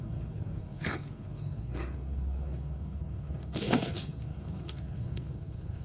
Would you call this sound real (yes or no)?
no